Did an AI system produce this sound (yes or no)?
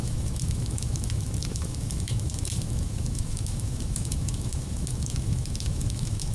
yes